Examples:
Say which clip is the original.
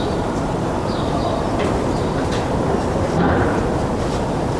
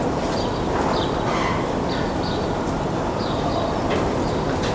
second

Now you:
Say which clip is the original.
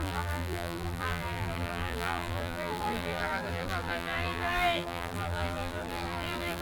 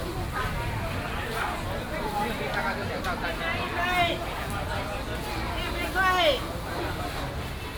second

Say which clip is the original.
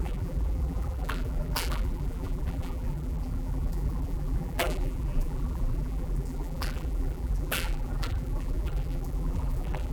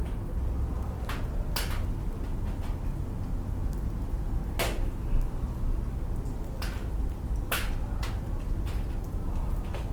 second